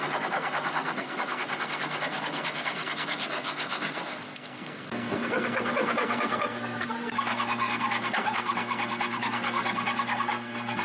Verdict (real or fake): fake